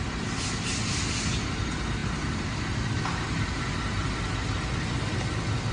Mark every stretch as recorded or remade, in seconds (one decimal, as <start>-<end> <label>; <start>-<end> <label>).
0.0-5.7 recorded